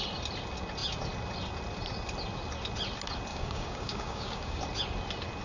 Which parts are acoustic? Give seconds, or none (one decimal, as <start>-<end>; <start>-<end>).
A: 0.0-3.3; 4.6-5.4